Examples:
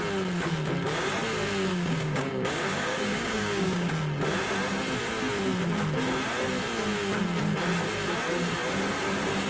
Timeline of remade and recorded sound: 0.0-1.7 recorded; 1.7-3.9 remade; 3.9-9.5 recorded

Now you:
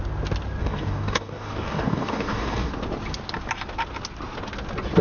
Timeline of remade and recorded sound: 0.0-0.6 recorded; 0.6-2.7 remade; 2.7-5.0 recorded

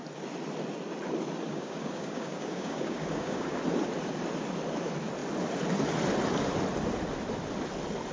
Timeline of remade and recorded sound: 0.0-1.5 recorded; 1.5-3.6 remade; 3.6-8.1 recorded

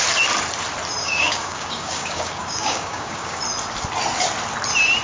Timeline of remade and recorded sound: 0.0-1.0 recorded; 1.0-3.4 remade; 3.4-5.0 recorded

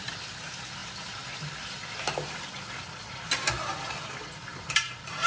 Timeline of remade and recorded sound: 0.0-5.3 recorded

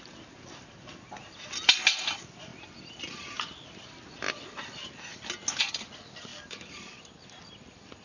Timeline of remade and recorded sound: 0.0-6.3 recorded; 6.3-7.0 remade; 7.0-8.0 recorded

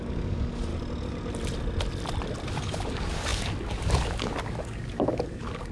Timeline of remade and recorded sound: 0.0-0.7 remade; 0.7-2.5 recorded; 2.5-5.7 remade

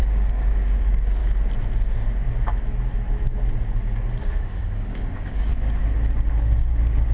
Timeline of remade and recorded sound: 0.0-1.2 remade; 1.2-4.2 recorded; 4.2-5.5 remade; 5.5-6.4 recorded; 6.4-7.1 remade